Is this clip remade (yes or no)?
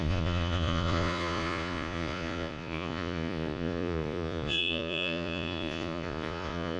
yes